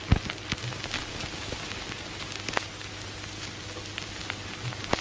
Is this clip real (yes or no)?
yes